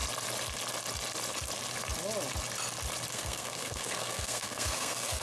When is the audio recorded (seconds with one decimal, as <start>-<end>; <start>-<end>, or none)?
0.0-3.1